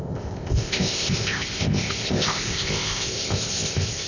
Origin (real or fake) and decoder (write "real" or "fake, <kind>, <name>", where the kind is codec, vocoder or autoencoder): fake, codec, ZipCodec